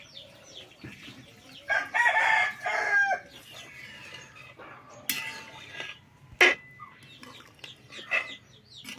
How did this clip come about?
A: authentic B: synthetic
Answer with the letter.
A